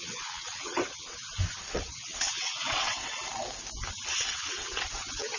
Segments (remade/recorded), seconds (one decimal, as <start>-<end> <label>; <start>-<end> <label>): 0.0-1.2 remade; 1.2-1.7 recorded; 1.7-3.1 remade; 3.1-4.2 recorded; 4.2-5.4 remade